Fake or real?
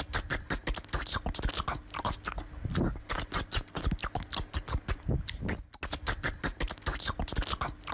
real